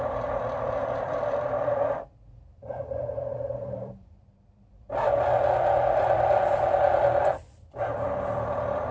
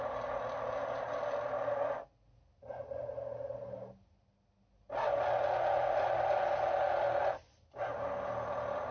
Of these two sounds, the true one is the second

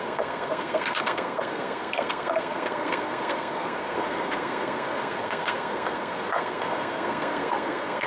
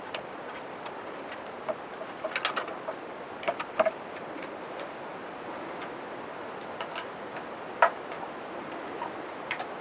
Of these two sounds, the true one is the second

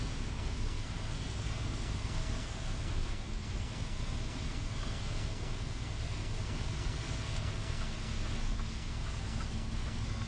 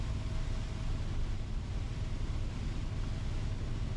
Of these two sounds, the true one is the second